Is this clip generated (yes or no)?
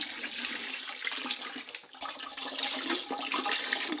yes